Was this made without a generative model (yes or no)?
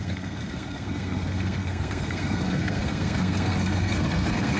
no